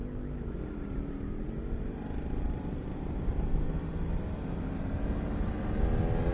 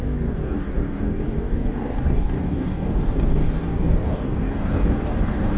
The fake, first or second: second